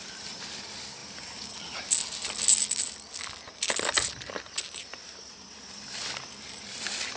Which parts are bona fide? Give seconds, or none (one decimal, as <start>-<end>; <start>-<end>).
0.0-7.2